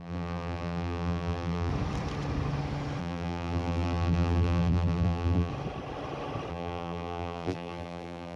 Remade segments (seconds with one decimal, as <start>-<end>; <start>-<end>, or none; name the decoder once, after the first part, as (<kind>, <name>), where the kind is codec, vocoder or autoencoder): 0.0-1.7 (vocoder, BigVGAN v2); 3.0-5.5; 6.5-8.4